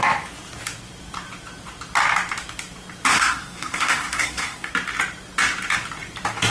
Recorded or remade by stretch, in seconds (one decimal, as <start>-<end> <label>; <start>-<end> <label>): 0.0-3.1 recorded; 3.1-4.7 remade; 4.7-6.5 recorded